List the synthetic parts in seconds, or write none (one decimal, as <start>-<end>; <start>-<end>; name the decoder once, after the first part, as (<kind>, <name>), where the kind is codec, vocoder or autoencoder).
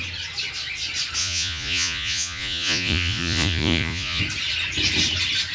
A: 1.2-4.2 (vocoder, Vocos)